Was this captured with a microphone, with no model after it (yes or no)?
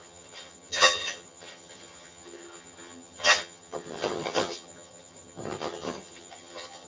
no